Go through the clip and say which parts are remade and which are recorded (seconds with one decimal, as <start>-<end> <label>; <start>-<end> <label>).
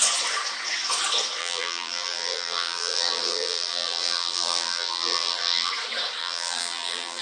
0.0-1.4 recorded; 1.4-5.7 remade; 5.7-6.2 recorded; 6.2-7.2 remade